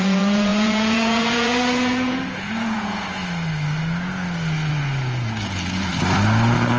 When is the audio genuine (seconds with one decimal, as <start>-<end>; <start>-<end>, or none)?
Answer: 3.2-4.7; 5.9-6.8